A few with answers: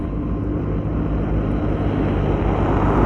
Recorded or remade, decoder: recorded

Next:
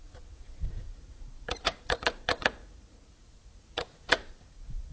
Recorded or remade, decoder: remade, vocoder, Vocos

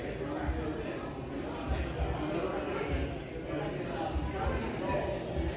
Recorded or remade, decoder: recorded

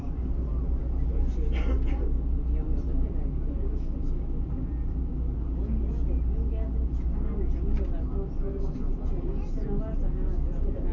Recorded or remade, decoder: recorded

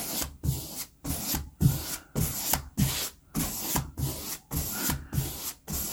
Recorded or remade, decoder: recorded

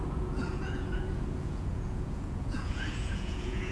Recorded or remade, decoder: remade, vocoder, Vocos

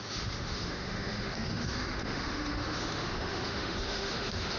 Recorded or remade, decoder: remade, autoencoder, DAC-VAE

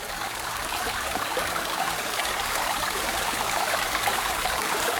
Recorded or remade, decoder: remade, codec, DAC